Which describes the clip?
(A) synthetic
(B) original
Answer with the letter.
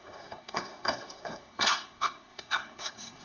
A